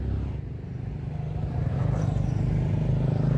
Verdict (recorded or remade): recorded